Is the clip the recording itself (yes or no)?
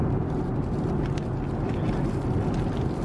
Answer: yes